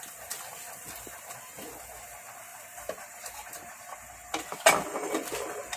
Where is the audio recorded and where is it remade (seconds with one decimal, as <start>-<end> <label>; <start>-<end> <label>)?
0.0-2.5 recorded; 2.5-4.1 remade; 4.1-5.8 recorded